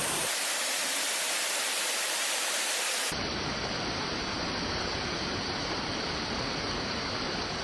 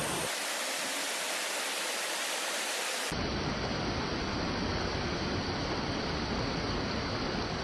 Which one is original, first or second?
second